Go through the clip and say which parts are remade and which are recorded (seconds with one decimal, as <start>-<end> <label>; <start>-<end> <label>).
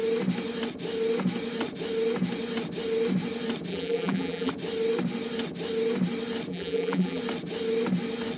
0.0-3.7 recorded; 3.7-4.5 remade; 4.5-6.5 recorded; 6.5-7.2 remade; 7.2-8.4 recorded